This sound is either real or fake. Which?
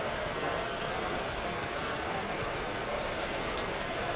fake